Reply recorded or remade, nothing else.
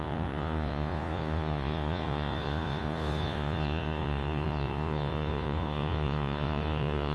remade